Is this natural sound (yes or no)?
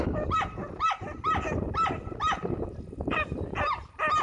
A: yes